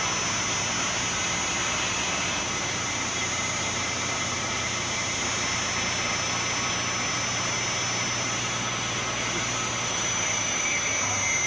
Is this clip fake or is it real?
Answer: real